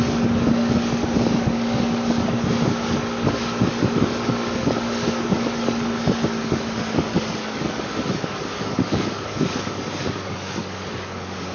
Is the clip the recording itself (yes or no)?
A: no